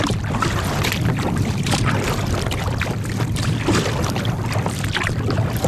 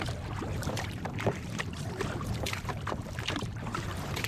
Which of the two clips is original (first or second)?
first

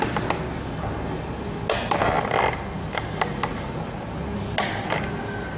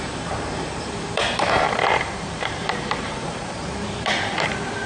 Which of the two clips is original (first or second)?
first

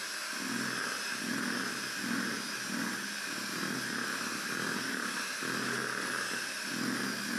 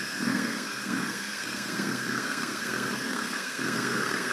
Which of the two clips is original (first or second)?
first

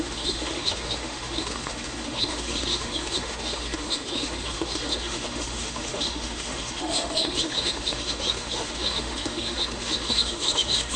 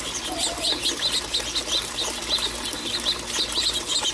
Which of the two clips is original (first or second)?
second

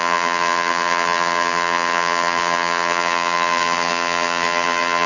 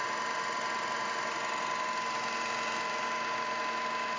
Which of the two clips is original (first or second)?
second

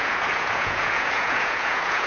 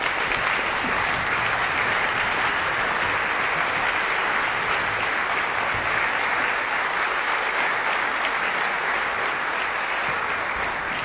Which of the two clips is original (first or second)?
second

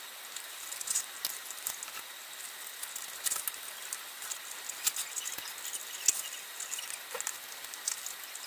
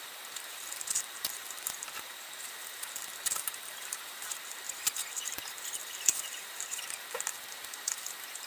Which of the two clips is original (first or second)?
first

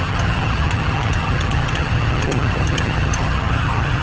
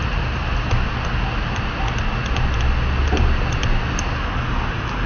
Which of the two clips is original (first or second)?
second